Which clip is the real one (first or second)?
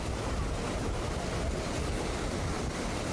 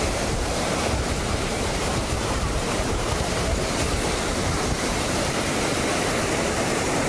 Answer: first